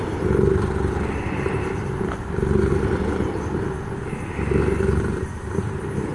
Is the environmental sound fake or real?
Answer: real